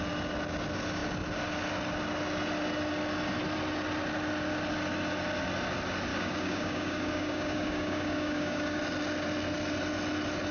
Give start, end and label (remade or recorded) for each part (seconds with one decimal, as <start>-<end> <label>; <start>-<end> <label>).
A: 0.0-6.1 recorded; 6.1-8.8 remade; 8.8-10.5 recorded

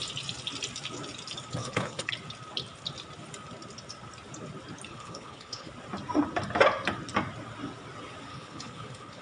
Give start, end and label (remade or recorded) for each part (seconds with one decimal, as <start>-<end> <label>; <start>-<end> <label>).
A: 0.0-1.6 recorded; 1.6-2.1 remade; 2.1-4.9 recorded; 4.9-5.7 remade; 5.7-8.3 recorded; 8.3-9.2 remade

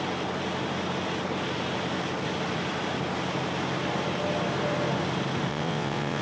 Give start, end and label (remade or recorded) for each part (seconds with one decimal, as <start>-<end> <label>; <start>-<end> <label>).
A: 0.0-5.5 recorded; 5.5-6.2 remade